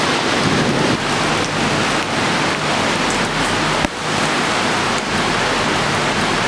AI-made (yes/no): no